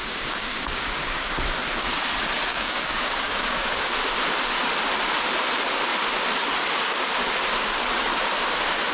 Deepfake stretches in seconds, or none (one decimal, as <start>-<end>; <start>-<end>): 0.0-1.3; 2.5-3.9